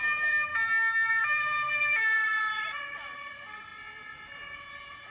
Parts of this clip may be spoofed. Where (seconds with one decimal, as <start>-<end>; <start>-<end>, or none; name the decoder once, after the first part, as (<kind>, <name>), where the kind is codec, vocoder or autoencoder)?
0.0-0.5 (vocoder, BigVGAN v2); 1.1-2.3; 2.8-3.7